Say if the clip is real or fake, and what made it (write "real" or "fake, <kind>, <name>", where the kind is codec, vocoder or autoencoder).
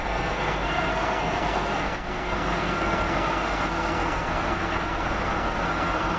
fake, codec, SNAC